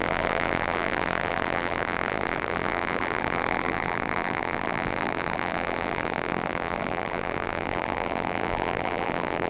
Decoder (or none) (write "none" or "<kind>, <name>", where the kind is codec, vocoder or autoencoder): vocoder, BigVGAN v2